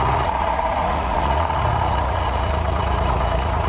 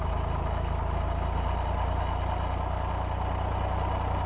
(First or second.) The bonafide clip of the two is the second